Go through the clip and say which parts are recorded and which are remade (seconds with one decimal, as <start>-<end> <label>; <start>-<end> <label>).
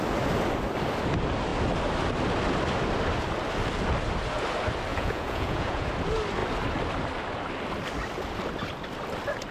0.0-4.9 recorded; 4.9-5.9 remade; 5.9-9.5 recorded